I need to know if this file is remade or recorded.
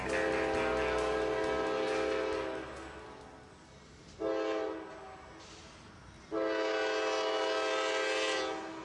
recorded